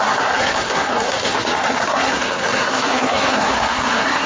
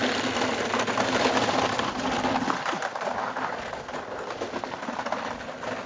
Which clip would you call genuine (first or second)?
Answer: second